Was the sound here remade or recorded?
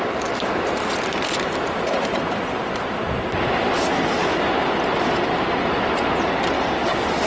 recorded